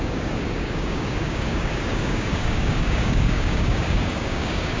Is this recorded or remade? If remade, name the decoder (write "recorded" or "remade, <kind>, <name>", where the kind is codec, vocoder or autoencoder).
remade, codec, DAC